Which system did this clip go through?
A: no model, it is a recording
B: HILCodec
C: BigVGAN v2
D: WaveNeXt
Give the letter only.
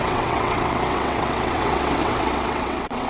D